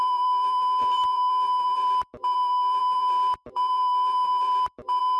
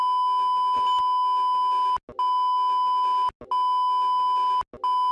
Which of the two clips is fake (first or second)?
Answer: first